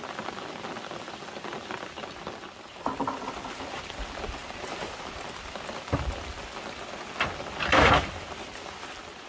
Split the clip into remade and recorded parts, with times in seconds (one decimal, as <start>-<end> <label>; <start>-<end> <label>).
0.0-9.3 recorded